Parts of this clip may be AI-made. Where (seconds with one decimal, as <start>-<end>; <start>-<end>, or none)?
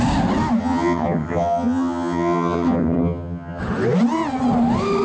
0.6-3.6